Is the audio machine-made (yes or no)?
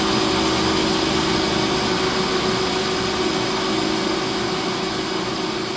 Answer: no